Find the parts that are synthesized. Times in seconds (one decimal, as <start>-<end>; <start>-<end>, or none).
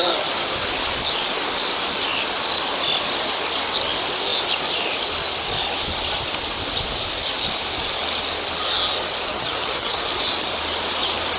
9.3-10.0